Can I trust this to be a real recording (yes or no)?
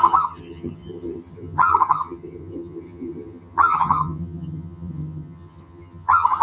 no